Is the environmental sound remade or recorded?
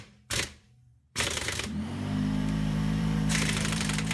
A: remade